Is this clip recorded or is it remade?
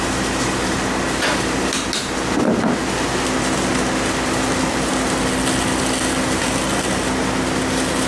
recorded